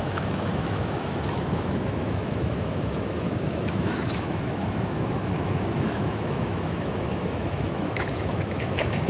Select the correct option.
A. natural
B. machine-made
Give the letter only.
B